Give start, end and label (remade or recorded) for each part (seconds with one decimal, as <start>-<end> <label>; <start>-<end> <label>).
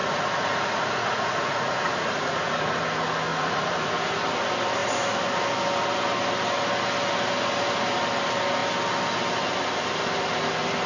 0.0-2.8 remade; 2.8-3.3 recorded; 3.3-3.9 remade; 3.9-10.9 recorded